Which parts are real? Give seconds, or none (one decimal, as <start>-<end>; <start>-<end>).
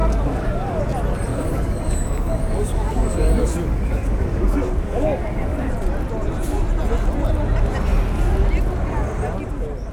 0.8-1.3; 5.7-9.9